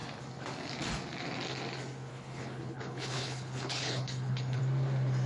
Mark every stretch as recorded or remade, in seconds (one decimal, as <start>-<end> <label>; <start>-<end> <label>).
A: 0.0-2.1 recorded; 2.1-4.6 remade; 4.6-5.3 recorded